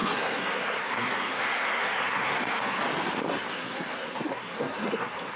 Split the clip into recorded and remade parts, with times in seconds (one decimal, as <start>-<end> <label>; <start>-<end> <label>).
0.0-2.8 remade; 2.8-3.3 recorded; 3.3-5.4 remade